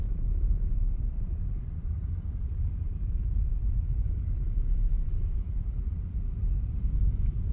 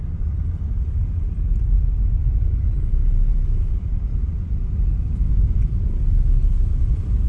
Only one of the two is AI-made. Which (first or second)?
first